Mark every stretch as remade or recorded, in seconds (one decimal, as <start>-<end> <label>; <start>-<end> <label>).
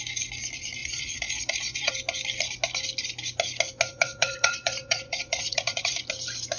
0.0-0.8 recorded; 0.8-1.9 remade; 1.9-3.9 recorded; 3.9-5.9 remade; 5.9-6.6 recorded